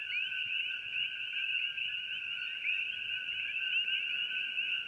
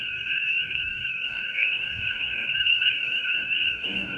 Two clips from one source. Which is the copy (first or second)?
second